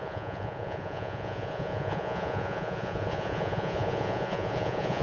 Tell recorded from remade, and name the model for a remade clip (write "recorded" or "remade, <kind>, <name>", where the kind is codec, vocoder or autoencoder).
remade, vocoder, Vocos